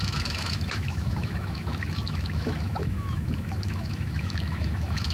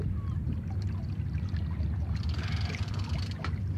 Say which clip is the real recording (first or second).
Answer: second